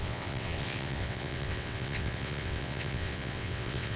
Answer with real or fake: fake